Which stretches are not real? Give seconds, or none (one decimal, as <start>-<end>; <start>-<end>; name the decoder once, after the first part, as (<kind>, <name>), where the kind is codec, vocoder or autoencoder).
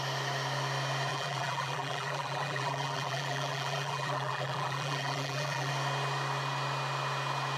1.1-5.7 (vocoder, BigVGAN v2)